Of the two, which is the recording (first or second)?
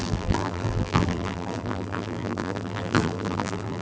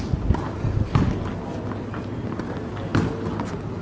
second